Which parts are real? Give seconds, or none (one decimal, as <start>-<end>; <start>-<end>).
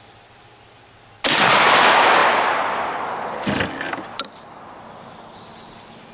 0.0-6.1